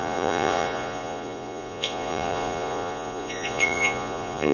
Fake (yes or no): yes